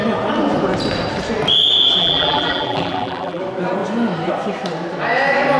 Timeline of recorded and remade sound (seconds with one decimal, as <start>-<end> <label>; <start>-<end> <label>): 0.0-2.0 recorded; 2.0-3.4 remade; 3.4-5.6 recorded